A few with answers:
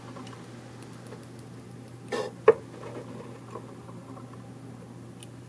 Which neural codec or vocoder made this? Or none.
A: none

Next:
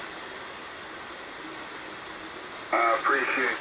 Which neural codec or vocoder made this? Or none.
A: none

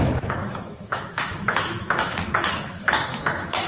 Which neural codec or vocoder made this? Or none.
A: autoencoder, DAC-VAE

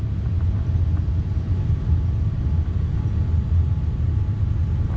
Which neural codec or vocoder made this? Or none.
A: none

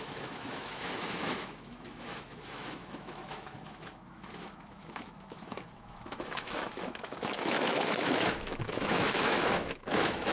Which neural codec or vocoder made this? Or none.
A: autoencoder, DAC-VAE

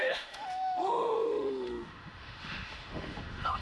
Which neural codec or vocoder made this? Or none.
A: autoencoder, DAC-VAE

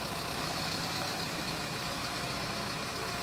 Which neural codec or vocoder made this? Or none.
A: autoencoder, DAC-VAE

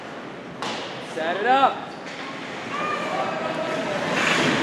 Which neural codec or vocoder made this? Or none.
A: none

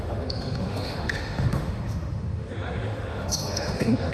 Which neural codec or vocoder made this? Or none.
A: autoencoder, DAC-VAE